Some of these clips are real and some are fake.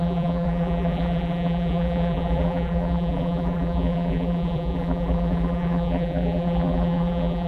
fake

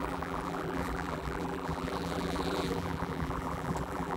fake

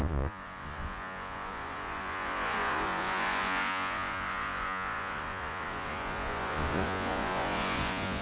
fake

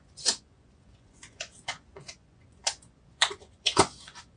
fake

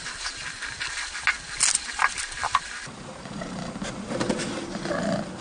real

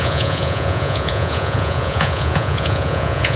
fake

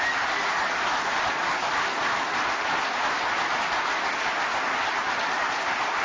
real